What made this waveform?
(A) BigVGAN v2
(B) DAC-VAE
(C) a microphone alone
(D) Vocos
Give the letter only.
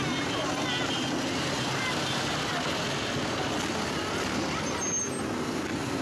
C